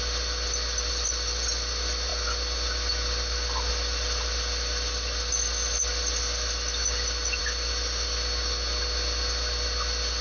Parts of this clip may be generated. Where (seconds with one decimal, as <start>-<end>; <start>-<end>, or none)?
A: none